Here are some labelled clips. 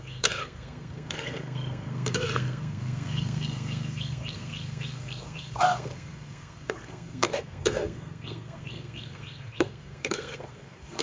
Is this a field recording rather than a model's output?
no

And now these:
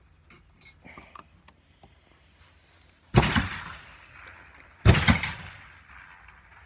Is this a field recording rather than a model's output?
yes